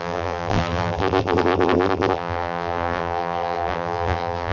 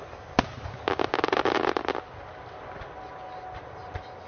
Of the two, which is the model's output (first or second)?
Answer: first